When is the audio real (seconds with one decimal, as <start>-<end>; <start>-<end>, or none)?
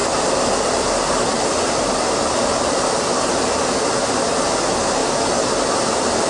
3.8-6.3